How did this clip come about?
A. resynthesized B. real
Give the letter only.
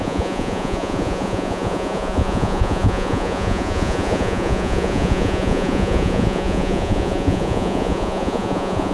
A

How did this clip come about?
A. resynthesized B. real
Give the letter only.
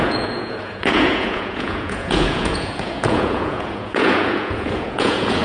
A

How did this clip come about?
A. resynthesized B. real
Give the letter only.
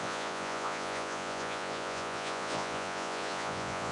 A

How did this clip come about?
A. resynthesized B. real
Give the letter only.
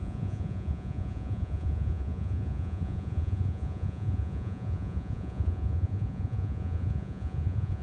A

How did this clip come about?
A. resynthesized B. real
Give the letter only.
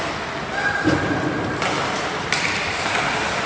B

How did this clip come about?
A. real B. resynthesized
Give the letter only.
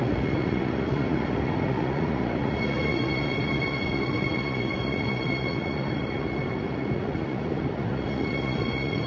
B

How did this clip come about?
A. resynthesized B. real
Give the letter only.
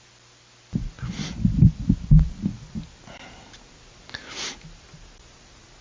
B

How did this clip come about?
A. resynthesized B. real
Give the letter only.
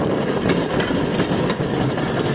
B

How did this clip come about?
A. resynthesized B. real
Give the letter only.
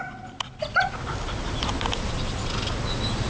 B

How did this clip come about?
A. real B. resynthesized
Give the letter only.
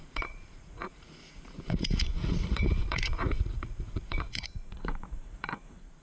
B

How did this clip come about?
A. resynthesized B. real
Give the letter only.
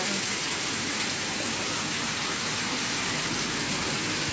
B